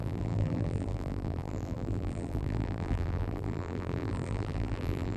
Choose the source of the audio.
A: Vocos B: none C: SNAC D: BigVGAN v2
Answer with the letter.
D